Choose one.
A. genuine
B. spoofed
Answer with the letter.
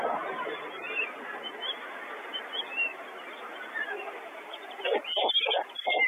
A